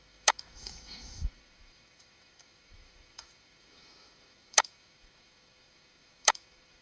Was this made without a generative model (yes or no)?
no